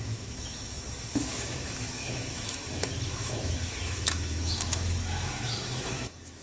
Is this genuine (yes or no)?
no